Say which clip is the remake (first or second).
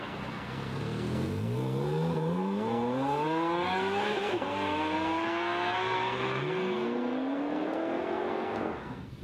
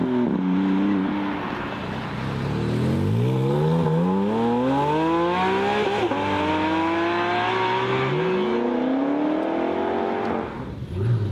first